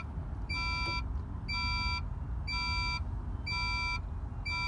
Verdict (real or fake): real